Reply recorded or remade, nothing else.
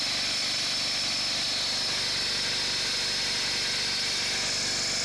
recorded